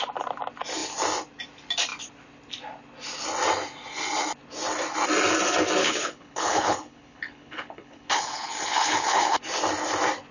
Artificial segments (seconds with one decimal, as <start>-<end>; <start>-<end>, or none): 5.8-9.4

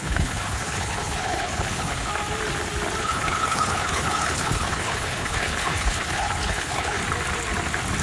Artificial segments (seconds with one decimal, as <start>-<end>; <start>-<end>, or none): 0.0-2.1; 3.0-7.0